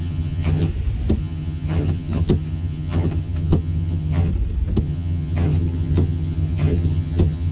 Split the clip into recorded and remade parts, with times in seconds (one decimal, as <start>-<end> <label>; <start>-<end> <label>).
0.0-0.7 remade; 0.7-1.2 recorded; 1.2-4.3 remade; 4.3-4.8 recorded; 4.8-7.5 remade